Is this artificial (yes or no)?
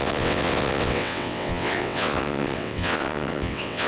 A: yes